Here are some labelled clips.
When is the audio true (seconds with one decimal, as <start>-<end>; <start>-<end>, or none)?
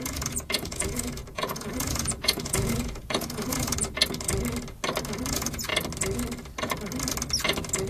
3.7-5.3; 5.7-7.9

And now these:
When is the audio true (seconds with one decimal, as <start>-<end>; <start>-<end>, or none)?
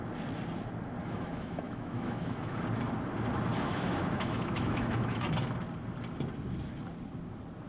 0.0-1.0; 2.6-3.5; 5.2-7.7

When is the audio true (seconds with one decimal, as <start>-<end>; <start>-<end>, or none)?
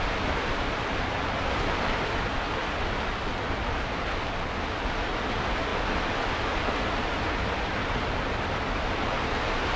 0.0-9.8